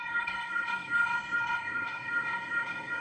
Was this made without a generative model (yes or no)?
no